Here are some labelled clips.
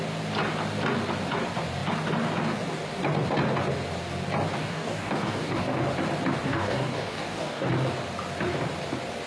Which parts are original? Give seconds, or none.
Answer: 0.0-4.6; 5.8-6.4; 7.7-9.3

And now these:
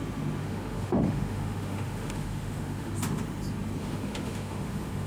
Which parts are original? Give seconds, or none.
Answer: 0.0-0.4; 2.9-3.8